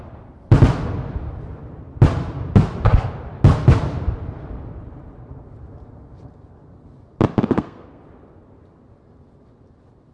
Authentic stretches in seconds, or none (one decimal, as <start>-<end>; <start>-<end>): 0.0-7.4; 8.0-10.1